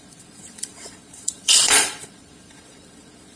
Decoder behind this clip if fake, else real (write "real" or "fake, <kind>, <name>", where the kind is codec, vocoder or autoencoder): fake, vocoder, Vocos